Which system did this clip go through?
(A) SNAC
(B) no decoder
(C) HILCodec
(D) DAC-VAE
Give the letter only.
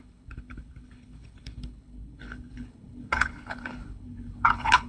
C